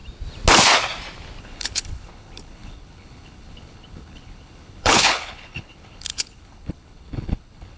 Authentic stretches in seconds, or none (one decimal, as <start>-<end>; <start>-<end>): 0.0-1.4